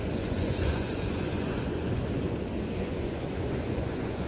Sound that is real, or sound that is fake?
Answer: fake